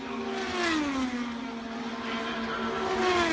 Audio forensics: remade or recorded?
recorded